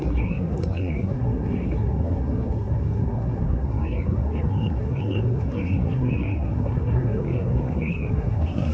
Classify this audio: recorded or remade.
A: remade